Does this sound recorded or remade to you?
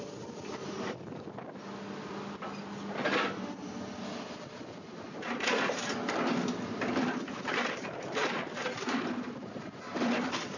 recorded